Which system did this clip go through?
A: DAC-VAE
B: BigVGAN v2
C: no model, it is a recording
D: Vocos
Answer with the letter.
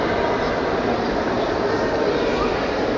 C